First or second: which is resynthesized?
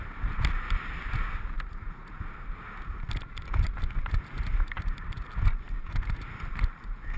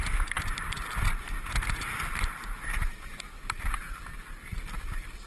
second